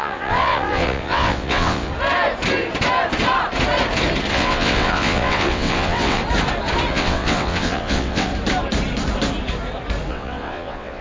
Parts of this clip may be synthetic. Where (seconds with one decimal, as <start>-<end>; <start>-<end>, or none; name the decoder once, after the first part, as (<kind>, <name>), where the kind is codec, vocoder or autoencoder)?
0.0-1.9 (vocoder, WaveNeXt); 4.3-6.2; 6.9-8.3; 10.1-11.0